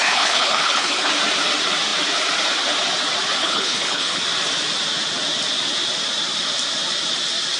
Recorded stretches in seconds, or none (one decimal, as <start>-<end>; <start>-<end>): 1.1-3.4; 4.2-7.6